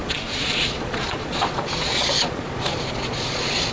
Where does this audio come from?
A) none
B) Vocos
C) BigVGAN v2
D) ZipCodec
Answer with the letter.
B